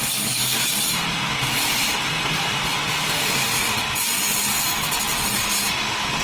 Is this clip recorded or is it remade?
recorded